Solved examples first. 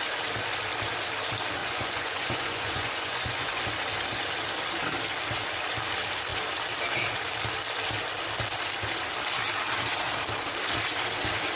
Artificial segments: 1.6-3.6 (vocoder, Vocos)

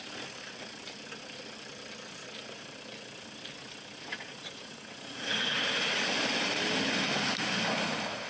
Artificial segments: 4.1-6.1 (vocoder, Vocos)

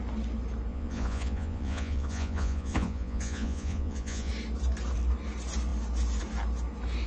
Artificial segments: 0.7-4.3 (vocoder, Vocos)

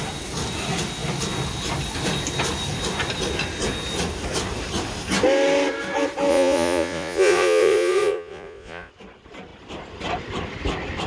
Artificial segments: 6.3-8.9 (vocoder, Vocos)

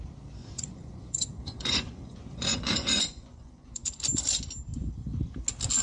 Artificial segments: 0.4-3.9 (vocoder, Vocos)